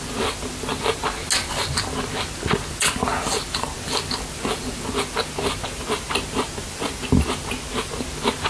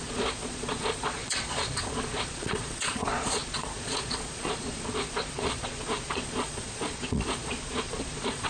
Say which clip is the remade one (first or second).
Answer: second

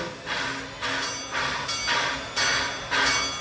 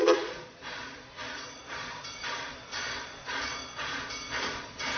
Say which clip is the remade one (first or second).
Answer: second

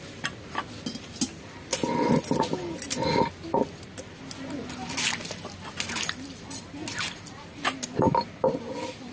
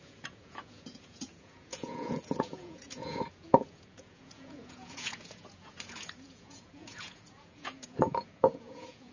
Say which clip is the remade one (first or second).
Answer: second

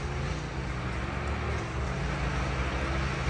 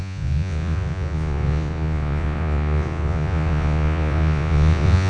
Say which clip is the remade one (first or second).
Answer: second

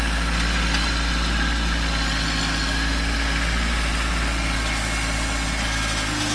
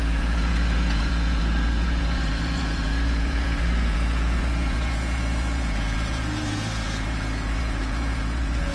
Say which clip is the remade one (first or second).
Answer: second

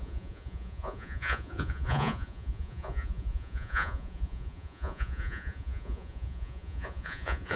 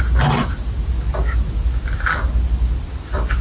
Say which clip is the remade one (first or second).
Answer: first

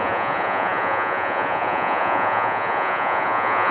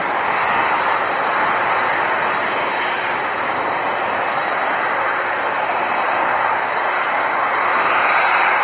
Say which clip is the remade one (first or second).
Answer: first